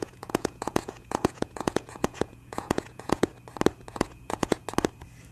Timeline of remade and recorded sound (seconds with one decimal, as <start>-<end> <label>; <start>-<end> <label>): 0.0-3.3 remade; 3.3-3.9 recorded; 3.9-4.6 remade; 4.6-5.3 recorded